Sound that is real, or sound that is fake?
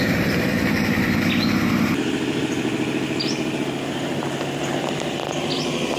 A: fake